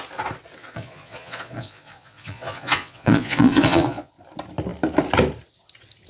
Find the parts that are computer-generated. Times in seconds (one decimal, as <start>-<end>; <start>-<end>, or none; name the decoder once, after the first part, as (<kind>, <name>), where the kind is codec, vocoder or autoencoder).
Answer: 0.6-4.1 (vocoder, Vocos)